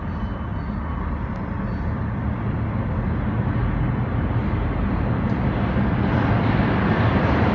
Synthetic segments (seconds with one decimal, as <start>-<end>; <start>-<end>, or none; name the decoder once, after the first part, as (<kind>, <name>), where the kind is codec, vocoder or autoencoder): none